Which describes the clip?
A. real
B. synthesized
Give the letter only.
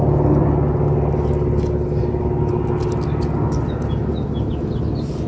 A